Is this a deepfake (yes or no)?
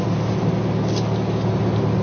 no